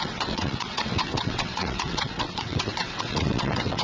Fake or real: fake